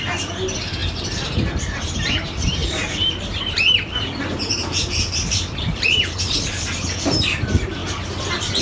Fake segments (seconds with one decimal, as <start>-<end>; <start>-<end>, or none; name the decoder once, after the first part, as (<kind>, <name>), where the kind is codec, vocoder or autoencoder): 0.0-8.6 (vocoder, BigVGAN v2)